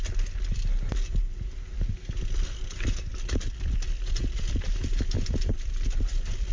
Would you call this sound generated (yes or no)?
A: no